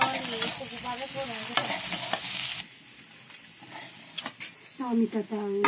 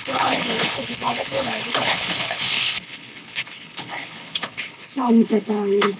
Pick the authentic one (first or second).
first